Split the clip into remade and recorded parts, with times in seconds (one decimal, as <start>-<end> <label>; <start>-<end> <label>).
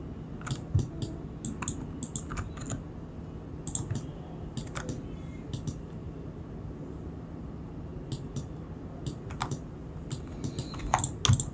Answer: 0.0-11.5 recorded